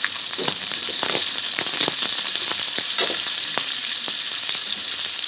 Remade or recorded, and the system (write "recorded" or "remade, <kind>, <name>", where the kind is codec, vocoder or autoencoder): remade, vocoder, BigVGAN v2